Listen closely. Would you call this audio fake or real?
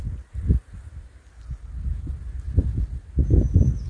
real